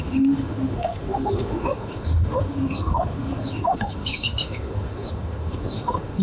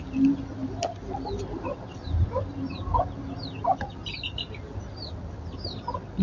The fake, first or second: first